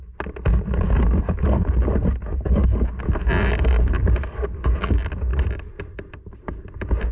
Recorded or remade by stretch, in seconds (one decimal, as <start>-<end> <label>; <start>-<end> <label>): 0.0-5.3 recorded; 5.3-6.6 remade; 6.6-7.1 recorded